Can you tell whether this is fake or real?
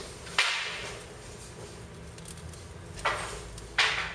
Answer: real